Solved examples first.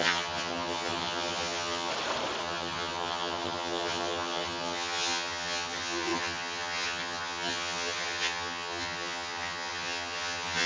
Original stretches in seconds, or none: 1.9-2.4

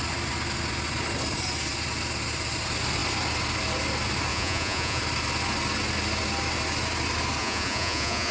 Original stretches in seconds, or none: 0.0-4.3; 5.0-7.4

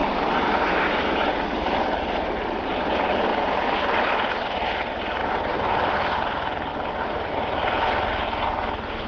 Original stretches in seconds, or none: 2.6-3.3; 4.3-5.2; 5.9-9.1

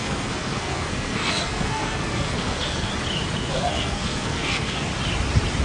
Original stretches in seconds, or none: 2.9-3.5; 4.9-5.6

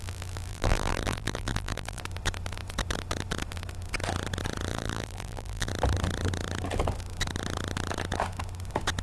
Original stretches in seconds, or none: 0.0-0.5; 2.0-4.7; 5.7-9.0

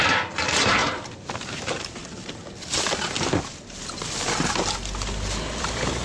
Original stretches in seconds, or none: 0.8-1.6; 2.0-5.6

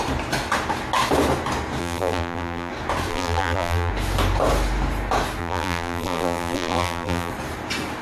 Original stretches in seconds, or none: 0.0-1.8; 2.7-3.1; 3.9-5.4; 7.3-8.0

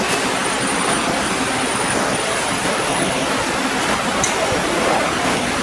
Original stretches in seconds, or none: 0.0-5.6